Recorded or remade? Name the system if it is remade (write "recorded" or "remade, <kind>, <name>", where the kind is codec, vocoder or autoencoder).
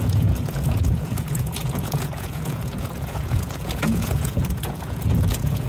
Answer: remade, vocoder, Vocos